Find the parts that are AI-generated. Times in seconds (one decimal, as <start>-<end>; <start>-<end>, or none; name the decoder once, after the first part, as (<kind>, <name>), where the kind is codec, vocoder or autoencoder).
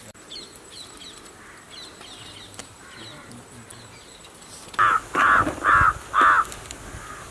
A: none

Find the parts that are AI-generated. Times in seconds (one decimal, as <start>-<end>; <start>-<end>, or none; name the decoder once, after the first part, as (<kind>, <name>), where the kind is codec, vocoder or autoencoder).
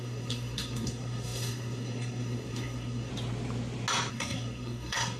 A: 0.0-3.1 (codec, SNAC); 4.1-5.2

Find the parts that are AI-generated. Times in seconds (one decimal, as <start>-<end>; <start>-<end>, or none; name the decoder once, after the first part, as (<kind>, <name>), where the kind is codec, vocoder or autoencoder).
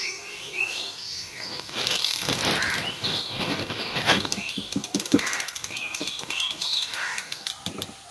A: 0.0-2.4 (codec, DAC); 2.9-7.5